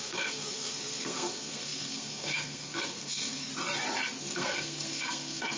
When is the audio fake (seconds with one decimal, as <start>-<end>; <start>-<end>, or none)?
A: 0.0-3.5; 4.2-5.6